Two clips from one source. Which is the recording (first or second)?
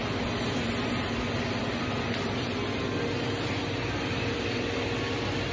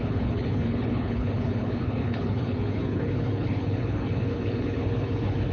first